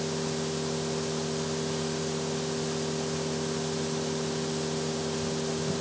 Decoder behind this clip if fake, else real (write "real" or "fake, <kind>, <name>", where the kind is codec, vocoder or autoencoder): real